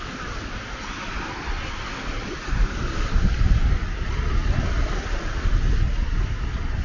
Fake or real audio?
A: real